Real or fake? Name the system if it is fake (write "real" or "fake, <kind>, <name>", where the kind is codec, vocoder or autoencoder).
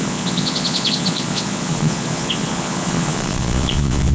fake, vocoder, Vocos